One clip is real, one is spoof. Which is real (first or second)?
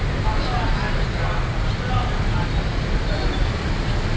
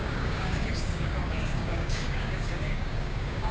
first